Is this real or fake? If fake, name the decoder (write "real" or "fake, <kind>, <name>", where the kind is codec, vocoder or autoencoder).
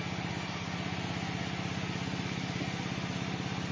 real